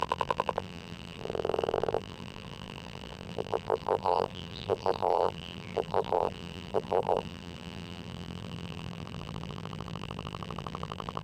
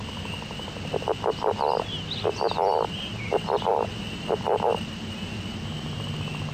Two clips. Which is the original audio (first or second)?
second